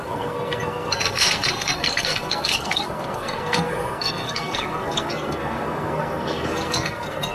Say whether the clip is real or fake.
fake